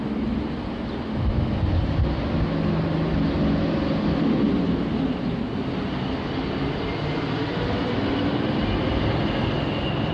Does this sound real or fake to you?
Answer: real